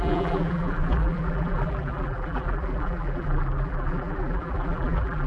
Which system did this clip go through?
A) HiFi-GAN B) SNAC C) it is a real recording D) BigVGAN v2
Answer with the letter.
D